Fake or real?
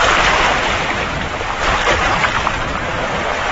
fake